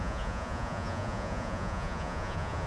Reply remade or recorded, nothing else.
remade